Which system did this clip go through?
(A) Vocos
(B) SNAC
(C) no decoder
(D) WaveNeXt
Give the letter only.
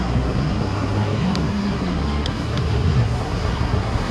B